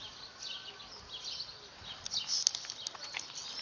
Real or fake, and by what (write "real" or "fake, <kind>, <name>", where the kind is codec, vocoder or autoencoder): real